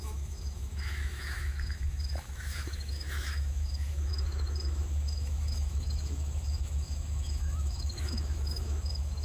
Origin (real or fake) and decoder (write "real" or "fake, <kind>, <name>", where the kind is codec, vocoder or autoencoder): fake, autoencoder, DAC-VAE